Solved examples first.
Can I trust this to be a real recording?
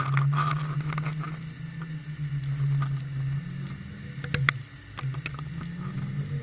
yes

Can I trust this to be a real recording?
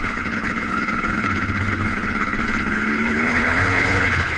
no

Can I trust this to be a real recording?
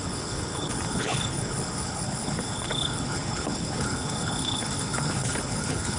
no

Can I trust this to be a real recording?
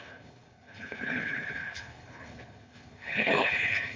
no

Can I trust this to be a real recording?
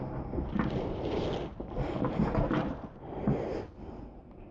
yes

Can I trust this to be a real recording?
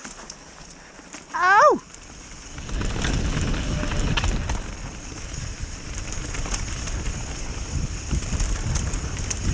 yes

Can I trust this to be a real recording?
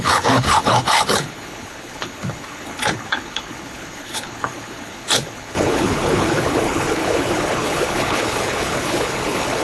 no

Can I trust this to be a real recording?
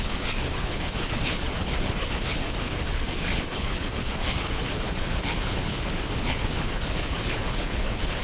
no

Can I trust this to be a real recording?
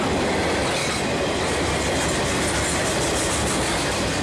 yes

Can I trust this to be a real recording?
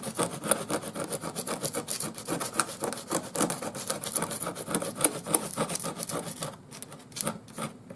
yes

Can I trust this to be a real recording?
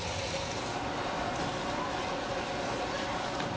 yes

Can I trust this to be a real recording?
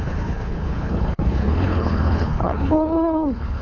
no